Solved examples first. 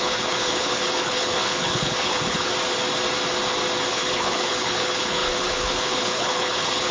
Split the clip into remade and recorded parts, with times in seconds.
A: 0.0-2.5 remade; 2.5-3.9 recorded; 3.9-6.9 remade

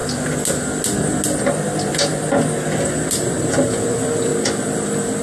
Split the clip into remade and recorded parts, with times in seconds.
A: 0.0-3.1 recorded; 3.1-4.3 remade; 4.3-5.2 recorded